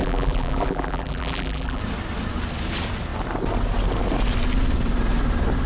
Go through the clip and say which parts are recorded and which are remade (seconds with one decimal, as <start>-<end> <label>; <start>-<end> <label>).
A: 0.0-1.8 remade; 1.8-5.7 recorded